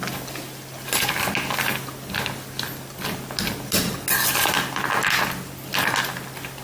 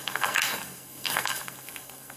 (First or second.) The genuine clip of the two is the first